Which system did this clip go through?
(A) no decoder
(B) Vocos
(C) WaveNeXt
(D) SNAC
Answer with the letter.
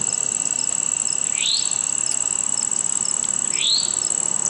A